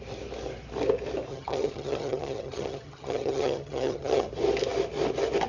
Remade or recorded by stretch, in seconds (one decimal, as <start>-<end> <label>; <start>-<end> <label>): 0.0-1.3 recorded; 1.3-4.3 remade; 4.3-5.5 recorded